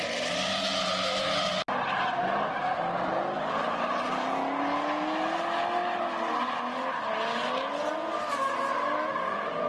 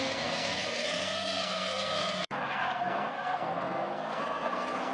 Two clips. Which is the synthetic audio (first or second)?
second